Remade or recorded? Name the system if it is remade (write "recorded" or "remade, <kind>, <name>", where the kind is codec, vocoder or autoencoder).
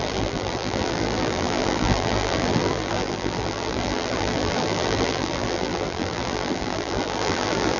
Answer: remade, vocoder, BigVGAN v2